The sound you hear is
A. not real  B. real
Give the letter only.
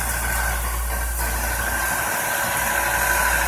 B